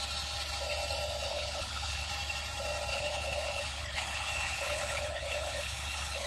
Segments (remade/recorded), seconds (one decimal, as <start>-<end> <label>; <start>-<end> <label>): 0.0-1.3 recorded; 1.3-2.1 remade; 2.1-2.9 recorded; 2.9-6.3 remade